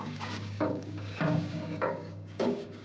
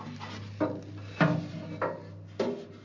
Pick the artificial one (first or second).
first